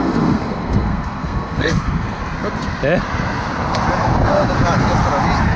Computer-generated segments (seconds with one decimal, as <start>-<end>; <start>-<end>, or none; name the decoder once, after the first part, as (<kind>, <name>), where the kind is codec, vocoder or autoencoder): 0.0-2.2 (codec, SNAC)